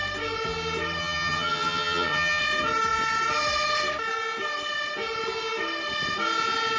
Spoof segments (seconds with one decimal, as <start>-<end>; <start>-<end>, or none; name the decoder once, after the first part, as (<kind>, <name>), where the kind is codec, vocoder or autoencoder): 1.0-2.4 (vocoder, HiFi-GAN)